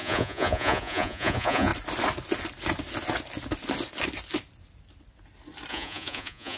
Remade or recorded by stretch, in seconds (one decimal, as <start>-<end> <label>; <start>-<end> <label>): 0.0-1.7 remade; 1.7-5.7 recorded; 5.7-6.6 remade